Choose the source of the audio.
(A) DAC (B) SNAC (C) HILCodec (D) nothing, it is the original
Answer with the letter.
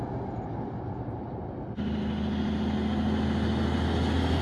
D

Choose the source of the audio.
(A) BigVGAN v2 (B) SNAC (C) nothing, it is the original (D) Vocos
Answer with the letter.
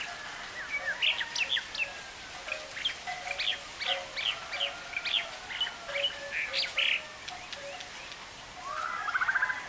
C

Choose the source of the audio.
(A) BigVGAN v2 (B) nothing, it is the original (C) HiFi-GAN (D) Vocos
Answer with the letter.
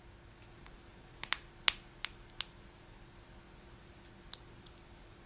B